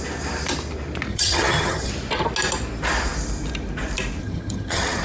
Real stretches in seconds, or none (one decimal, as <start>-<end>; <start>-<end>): 0.0-1.1; 1.9-4.2